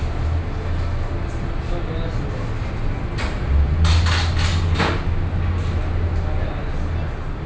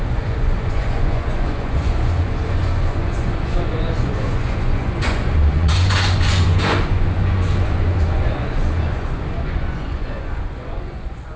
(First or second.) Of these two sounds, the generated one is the second